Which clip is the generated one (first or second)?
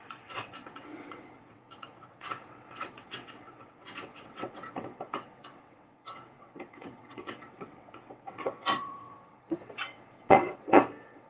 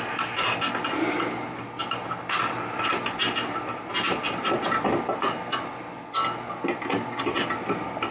first